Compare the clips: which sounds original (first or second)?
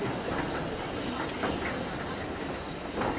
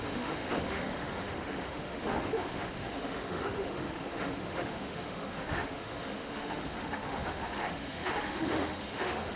first